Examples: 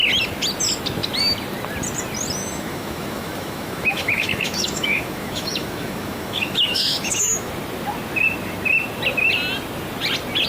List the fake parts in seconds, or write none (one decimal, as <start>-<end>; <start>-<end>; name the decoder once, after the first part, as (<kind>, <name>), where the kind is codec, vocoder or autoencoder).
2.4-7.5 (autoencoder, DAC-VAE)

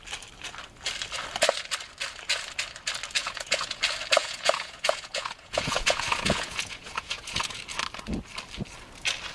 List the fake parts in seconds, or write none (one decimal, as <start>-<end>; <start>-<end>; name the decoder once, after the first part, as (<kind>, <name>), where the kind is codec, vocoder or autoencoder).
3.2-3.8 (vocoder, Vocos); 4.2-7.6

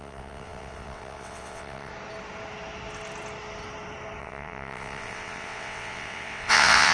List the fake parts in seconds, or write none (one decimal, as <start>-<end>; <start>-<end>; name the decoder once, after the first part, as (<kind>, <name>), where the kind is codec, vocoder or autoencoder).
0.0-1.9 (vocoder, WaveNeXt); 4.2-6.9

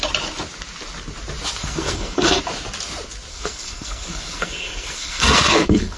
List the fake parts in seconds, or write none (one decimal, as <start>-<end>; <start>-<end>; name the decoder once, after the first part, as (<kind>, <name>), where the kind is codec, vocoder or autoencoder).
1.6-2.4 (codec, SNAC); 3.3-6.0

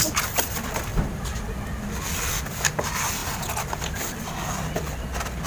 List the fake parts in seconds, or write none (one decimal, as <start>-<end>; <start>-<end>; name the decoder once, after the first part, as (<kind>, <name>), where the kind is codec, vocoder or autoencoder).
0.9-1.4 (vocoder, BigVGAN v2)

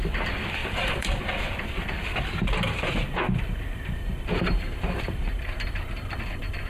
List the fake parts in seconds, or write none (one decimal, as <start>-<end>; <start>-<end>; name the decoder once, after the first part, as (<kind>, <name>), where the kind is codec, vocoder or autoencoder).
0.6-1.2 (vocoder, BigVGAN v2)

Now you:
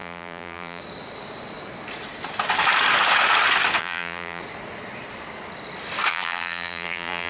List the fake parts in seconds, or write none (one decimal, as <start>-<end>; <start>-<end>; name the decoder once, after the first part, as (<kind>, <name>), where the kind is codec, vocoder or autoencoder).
0.0-0.8 (vocoder, BigVGAN v2); 3.8-4.4; 6.1-7.3